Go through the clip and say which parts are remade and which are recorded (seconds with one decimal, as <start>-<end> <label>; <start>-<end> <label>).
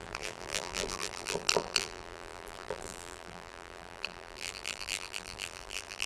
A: 0.0-6.1 remade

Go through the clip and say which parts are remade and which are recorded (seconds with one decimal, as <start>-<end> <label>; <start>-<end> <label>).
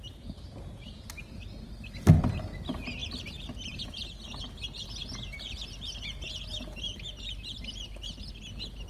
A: 0.0-8.9 recorded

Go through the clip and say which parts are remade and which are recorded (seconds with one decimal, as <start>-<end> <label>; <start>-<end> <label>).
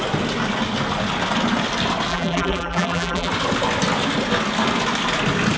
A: 0.0-2.1 recorded; 2.1-3.3 remade; 3.3-5.6 recorded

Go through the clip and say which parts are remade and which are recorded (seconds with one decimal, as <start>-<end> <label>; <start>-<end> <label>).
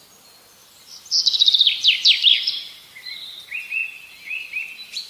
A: 0.0-5.1 recorded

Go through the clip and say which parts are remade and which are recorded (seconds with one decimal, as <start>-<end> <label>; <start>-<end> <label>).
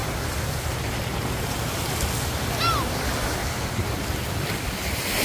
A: 0.0-0.6 recorded; 0.6-1.1 remade; 1.1-2.3 recorded; 2.3-3.4 remade; 3.4-4.3 recorded; 4.3-5.2 remade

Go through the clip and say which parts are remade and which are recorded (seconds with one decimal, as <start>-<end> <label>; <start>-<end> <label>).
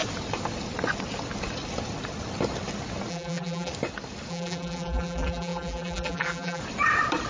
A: 0.0-3.1 recorded; 3.1-3.7 remade; 3.7-4.3 recorded; 4.3-6.6 remade; 6.6-7.3 recorded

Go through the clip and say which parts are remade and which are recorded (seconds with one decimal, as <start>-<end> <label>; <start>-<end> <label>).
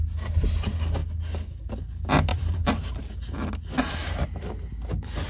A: 0.0-2.3 recorded; 2.3-3.1 remade; 3.1-4.0 recorded; 4.0-4.5 remade; 4.5-5.3 recorded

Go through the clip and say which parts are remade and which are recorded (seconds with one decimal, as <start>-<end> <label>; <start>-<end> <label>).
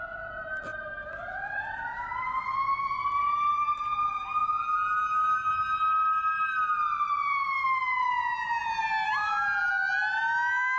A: 0.0-0.7 recorded; 0.7-2.2 remade; 2.2-10.8 recorded